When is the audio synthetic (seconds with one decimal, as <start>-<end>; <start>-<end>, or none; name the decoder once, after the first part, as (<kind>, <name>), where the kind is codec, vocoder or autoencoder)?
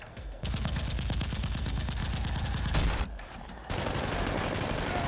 0.0-2.0 (codec, SNAC)